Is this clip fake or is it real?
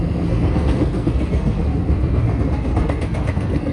fake